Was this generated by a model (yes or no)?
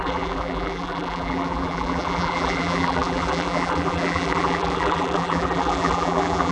yes